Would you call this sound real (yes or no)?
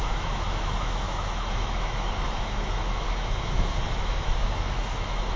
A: no